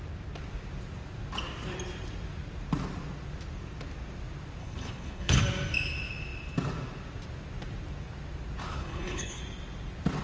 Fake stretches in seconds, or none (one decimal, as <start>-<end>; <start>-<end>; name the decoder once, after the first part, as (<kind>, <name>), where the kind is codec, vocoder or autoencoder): 4.6-5.4 (codec, HILCodec); 8.7-9.4

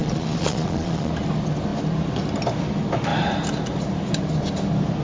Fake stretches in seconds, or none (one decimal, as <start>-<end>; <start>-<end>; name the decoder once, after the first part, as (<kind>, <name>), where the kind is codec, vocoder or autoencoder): 0.0-1.1 (vocoder, Vocos)